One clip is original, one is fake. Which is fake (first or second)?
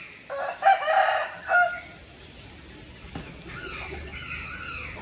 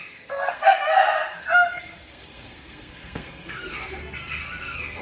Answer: second